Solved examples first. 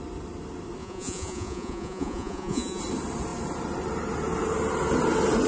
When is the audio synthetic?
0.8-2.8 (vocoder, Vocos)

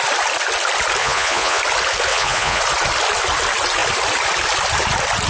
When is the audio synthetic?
1.0-1.6 (vocoder, Vocos); 2.1-2.6

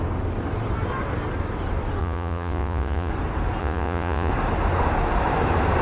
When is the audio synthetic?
2.0-3.1 (vocoder, Vocos); 3.6-4.3

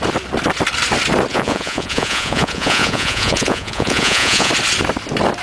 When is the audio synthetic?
1.3-4.5 (vocoder, Vocos)